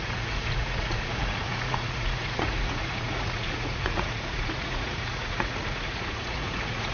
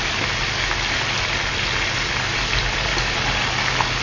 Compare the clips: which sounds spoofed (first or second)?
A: first